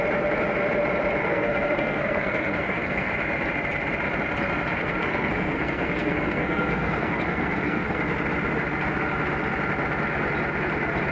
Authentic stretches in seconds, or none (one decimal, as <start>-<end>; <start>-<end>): 0.0-1.2; 3.1-4.7; 8.0-11.1